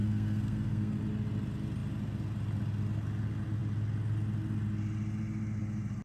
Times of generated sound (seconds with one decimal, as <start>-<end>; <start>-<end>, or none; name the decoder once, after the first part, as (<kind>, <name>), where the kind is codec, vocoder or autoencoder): 0.0-1.0 (codec, SNAC)

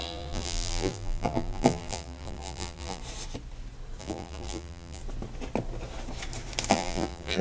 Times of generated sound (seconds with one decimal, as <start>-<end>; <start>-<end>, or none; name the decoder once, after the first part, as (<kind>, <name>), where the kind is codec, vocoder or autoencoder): 0.0-3.0 (vocoder, BigVGAN v2); 4.0-5.0; 6.7-7.4

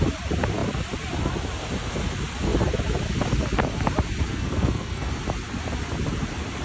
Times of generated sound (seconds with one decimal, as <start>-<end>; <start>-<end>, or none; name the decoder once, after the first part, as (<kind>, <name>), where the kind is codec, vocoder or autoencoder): 4.3-5.1 (codec, SNAC)